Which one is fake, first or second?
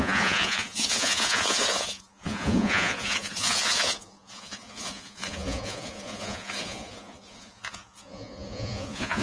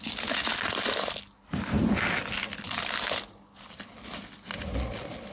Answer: first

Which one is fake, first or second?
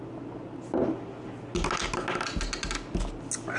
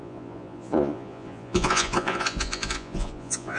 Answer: second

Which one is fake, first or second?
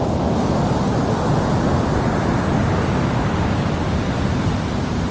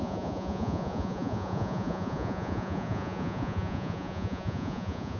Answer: second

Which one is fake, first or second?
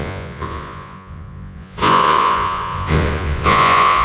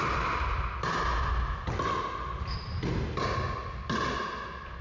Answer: first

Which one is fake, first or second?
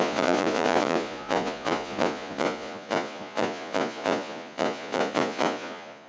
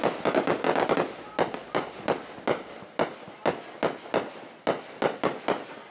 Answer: first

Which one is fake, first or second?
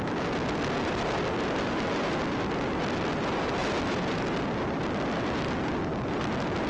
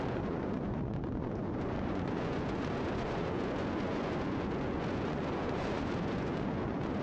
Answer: second